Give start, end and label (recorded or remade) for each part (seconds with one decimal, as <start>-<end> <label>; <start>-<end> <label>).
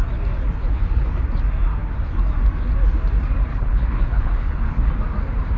0.0-0.6 recorded; 0.6-1.2 remade; 1.2-3.5 recorded; 3.5-4.9 remade; 4.9-5.6 recorded